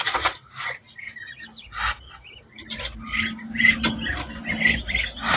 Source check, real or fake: real